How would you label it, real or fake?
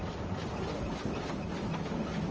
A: real